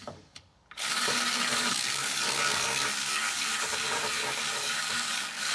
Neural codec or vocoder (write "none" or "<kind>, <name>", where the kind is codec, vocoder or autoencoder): codec, DAC